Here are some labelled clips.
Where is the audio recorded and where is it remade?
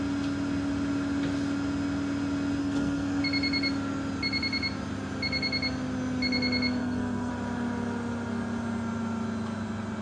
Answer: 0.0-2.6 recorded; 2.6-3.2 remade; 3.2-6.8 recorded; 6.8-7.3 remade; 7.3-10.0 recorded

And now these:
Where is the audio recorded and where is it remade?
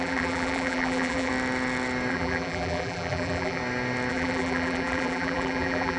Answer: 0.0-1.3 remade; 1.3-2.1 recorded; 2.1-3.6 remade; 3.6-4.1 recorded; 4.1-6.0 remade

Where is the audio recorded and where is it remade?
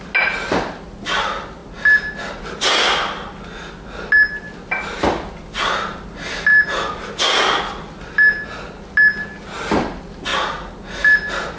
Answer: 0.0-11.6 recorded